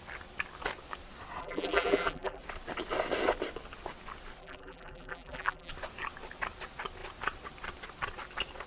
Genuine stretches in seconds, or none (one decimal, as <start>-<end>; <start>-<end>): 0.0-1.4; 2.4-4.4; 5.7-8.7